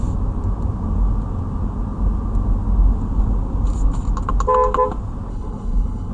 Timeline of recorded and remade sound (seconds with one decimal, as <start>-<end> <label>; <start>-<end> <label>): 0.0-5.3 recorded; 5.3-6.1 remade